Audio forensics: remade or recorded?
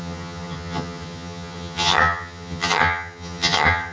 remade